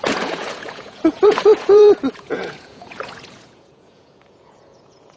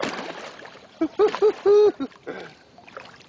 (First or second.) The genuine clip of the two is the second